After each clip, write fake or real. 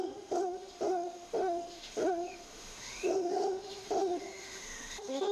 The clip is fake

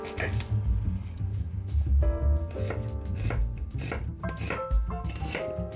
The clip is fake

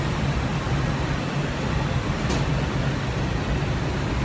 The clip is real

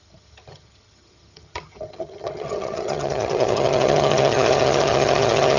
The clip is fake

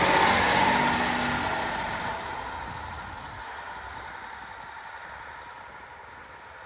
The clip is real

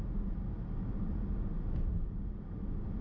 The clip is real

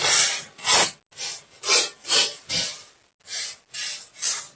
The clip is real